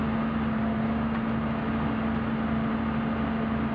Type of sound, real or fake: real